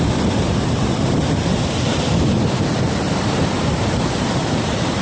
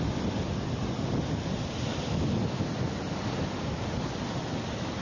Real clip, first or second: second